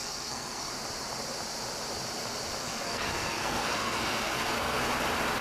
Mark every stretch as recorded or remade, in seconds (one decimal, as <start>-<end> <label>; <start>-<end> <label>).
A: 0.0-0.7 remade; 0.7-2.6 recorded; 2.6-4.8 remade; 4.8-5.4 recorded